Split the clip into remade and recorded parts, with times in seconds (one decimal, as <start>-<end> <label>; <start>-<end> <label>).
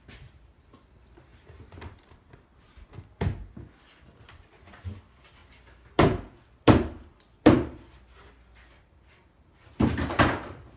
0.0-1.3 remade; 1.3-5.0 recorded; 5.0-5.4 remade; 5.4-8.8 recorded; 8.8-10.8 remade